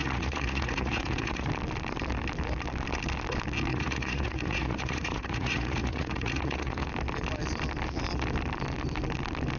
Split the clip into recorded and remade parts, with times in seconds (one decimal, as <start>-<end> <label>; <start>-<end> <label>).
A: 0.0-1.5 remade; 1.5-3.7 recorded; 3.7-6.9 remade; 6.9-9.6 recorded